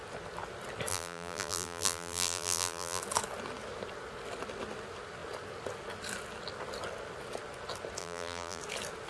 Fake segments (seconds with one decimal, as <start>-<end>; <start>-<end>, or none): 0.9-3.0; 8.0-8.6